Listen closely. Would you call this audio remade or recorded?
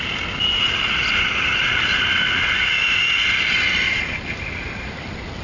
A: recorded